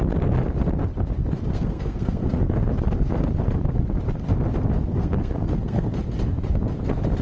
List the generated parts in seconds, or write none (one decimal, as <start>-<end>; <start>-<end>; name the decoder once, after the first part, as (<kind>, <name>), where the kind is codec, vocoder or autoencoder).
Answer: 1.5-2.7 (codec, SNAC); 4.9-6.0